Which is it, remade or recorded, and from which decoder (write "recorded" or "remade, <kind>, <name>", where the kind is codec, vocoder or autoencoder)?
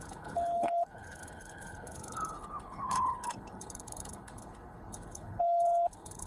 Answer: remade, codec, HILCodec